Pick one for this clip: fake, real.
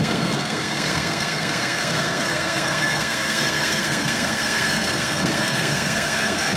fake